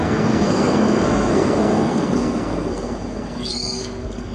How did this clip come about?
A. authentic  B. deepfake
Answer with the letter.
B